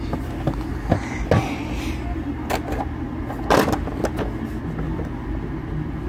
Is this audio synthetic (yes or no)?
no